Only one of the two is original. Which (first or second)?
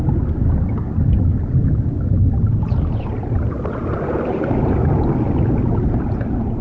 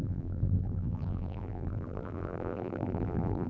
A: first